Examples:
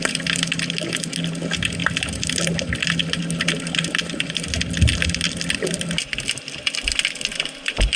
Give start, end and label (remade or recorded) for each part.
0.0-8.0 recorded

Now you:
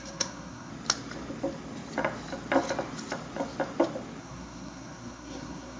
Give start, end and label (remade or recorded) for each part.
0.0-0.7 remade; 0.7-4.2 recorded; 4.2-5.8 remade

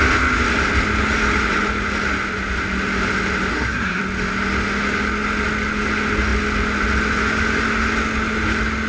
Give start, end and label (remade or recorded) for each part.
0.0-3.5 recorded; 3.5-4.0 remade; 4.0-8.9 recorded

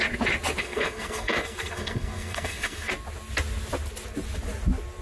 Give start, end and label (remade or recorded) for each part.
0.0-0.6 recorded; 0.6-2.9 remade; 2.9-5.0 recorded

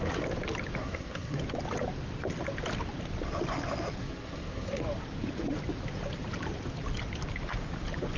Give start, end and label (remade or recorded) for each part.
0.0-0.8 recorded; 0.8-1.4 remade; 1.4-4.0 recorded; 4.0-4.8 remade; 4.8-8.2 recorded

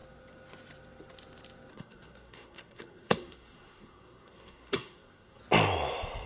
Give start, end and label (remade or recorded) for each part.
0.0-1.7 recorded; 1.7-5.4 remade; 5.4-6.3 recorded